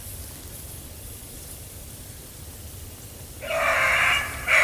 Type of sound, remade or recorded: recorded